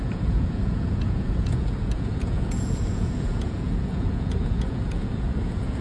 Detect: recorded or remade remade